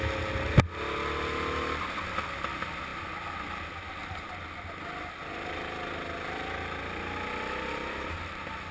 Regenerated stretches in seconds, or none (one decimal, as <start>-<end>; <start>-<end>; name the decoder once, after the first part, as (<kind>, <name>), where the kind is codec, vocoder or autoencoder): none